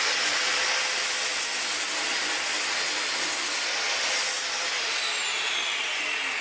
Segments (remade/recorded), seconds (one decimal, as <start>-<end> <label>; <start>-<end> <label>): 0.0-6.4 recorded